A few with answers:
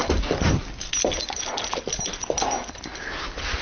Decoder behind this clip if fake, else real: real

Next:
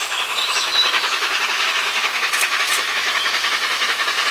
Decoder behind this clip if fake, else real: fake, autoencoder, DAC-VAE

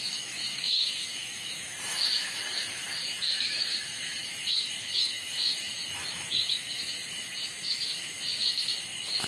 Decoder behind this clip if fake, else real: fake, autoencoder, DAC-VAE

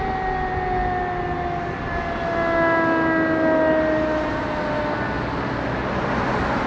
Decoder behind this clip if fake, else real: real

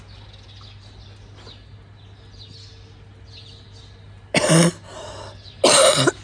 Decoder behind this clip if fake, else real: real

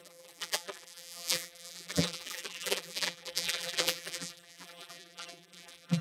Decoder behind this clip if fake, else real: fake, vocoder, BigVGAN v2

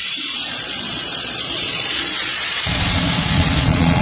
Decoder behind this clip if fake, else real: fake, vocoder, Vocos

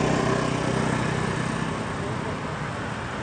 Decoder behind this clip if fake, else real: real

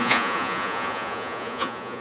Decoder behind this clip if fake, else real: fake, vocoder, Vocos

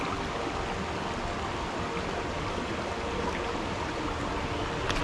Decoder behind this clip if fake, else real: real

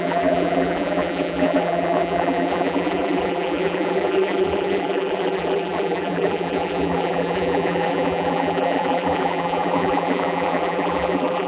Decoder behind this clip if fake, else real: fake, vocoder, BigVGAN v2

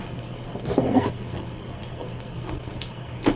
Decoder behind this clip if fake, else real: fake, codec, SNAC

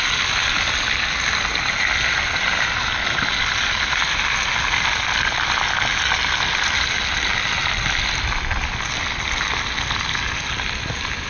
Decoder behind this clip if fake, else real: real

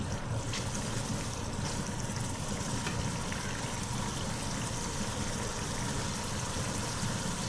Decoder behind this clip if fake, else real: real